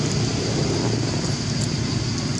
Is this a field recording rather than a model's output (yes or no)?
yes